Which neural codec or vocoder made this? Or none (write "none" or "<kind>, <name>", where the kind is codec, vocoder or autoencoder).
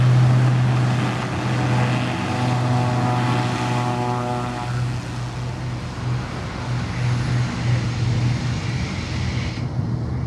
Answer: none